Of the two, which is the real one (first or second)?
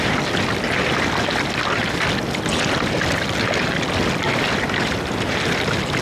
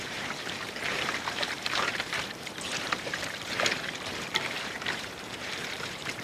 first